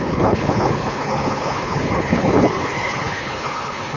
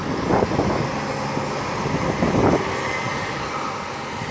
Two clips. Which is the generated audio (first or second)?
first